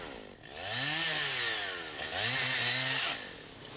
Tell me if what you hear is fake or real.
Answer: real